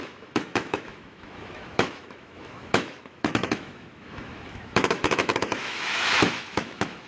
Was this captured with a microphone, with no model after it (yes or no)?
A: no